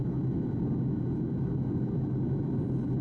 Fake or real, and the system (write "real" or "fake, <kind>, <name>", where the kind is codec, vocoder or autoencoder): real